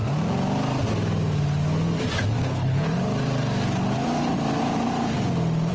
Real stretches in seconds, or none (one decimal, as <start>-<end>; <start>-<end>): 0.0-2.4; 2.9-5.7